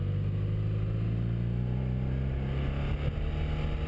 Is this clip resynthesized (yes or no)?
no